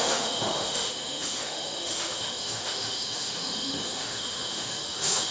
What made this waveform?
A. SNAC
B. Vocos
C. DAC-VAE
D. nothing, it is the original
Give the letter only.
C